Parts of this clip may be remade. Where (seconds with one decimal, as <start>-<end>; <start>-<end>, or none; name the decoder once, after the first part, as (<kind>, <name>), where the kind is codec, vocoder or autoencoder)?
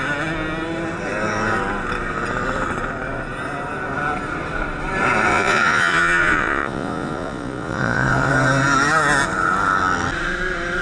5.3-8.3 (vocoder, Vocos)